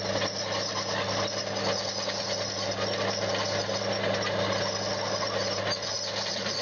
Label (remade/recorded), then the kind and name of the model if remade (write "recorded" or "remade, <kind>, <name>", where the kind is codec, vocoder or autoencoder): recorded